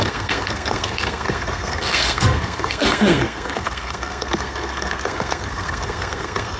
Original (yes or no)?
no